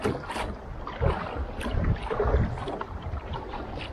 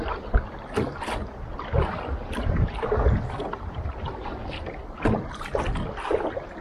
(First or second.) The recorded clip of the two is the second